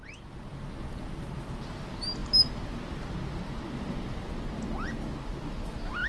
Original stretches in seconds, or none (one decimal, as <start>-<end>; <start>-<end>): 0.0-6.1